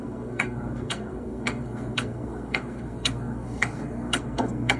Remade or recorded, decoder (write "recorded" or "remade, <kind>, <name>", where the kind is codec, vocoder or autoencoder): remade, codec, SNAC